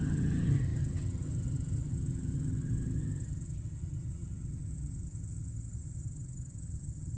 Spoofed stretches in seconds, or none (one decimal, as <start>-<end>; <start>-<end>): 0.0-7.2